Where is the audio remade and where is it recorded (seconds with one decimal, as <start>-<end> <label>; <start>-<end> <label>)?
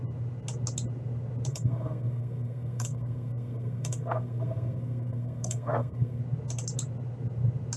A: 0.0-1.5 recorded; 1.5-6.2 remade; 6.2-7.8 recorded